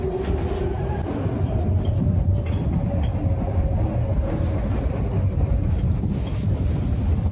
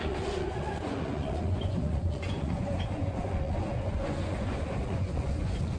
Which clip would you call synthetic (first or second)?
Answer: second